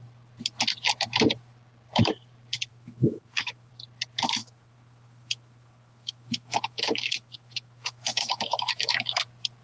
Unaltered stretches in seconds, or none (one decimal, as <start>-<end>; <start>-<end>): 0.0-2.7; 3.7-4.4; 9.2-9.6

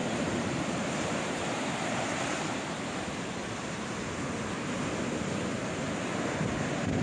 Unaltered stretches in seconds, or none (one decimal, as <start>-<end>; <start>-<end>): 4.2-7.0